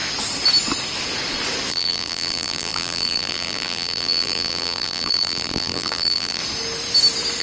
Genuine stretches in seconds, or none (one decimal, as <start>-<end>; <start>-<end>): 0.0-1.7; 6.4-7.4